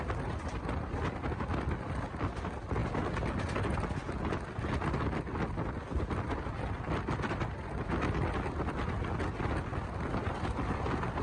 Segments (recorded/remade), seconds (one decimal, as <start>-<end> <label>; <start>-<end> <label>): 0.0-11.2 recorded